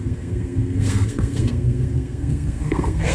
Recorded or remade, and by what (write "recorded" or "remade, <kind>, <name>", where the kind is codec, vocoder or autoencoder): remade, codec, SNAC